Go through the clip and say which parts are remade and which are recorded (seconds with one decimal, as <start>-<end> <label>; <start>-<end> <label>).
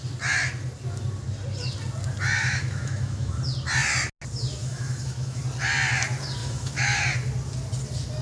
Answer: 0.0-2.4 recorded; 2.4-3.3 remade; 3.3-4.6 recorded; 4.6-5.4 remade; 5.4-6.4 recorded; 6.4-7.0 remade; 7.0-8.2 recorded